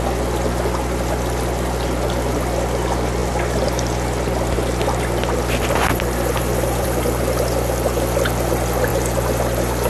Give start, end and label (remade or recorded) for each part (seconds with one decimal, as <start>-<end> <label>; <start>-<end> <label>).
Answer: 0.0-3.2 recorded; 3.2-4.5 remade; 4.5-8.9 recorded; 8.9-9.9 remade